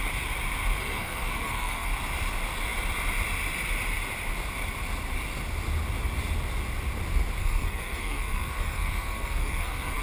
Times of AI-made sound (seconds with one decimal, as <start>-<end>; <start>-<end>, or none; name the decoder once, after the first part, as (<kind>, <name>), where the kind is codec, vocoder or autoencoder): 0.8-1.9 (codec, SNAC); 7.4-10.0